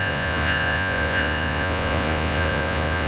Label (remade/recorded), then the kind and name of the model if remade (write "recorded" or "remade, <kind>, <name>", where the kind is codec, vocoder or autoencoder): remade, vocoder, Vocos